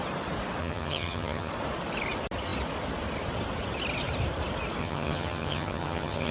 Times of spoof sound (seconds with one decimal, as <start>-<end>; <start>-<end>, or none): 0.6-1.5; 4.8-6.3

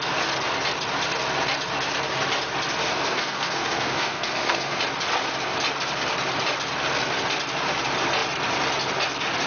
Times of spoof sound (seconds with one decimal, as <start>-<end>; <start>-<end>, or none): 2.9-4.8

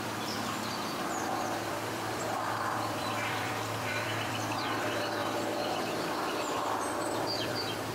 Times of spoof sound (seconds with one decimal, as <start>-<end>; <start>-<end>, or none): 0.0-7.9

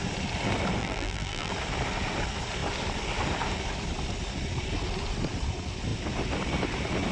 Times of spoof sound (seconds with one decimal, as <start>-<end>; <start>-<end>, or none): 0.8-1.5

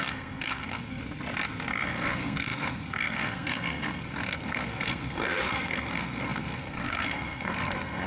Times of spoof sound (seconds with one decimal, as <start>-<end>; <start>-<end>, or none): 0.0-1.0; 1.9-8.1